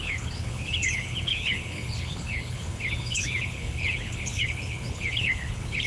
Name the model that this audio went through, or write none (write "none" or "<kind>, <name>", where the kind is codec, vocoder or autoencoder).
codec, HILCodec